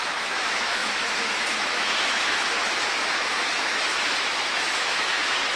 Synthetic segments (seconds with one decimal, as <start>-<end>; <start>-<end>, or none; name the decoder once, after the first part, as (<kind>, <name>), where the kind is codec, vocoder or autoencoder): 0.0-5.6 (autoencoder, DAC-VAE)